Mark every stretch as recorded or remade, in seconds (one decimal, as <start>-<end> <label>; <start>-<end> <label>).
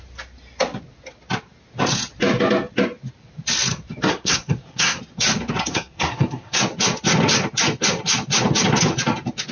0.0-4.1 recorded; 4.1-5.0 remade; 5.0-5.7 recorded; 5.7-6.6 remade; 6.6-9.5 recorded